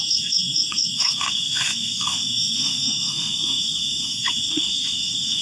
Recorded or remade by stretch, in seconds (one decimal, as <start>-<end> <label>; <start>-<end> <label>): 0.0-5.4 remade

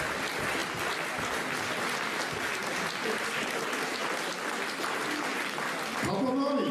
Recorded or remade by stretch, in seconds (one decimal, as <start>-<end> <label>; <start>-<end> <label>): 0.0-6.7 recorded

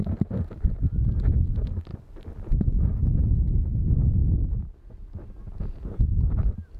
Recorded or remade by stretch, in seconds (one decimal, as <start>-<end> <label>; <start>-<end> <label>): 0.0-6.8 recorded

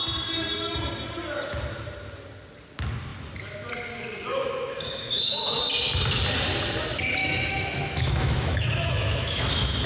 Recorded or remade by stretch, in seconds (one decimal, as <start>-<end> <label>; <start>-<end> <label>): 0.0-4.3 recorded; 4.3-5.6 remade; 5.6-7.2 recorded; 7.2-9.5 remade; 9.5-9.9 recorded